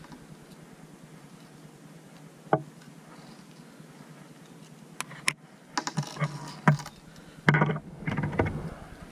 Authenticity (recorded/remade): recorded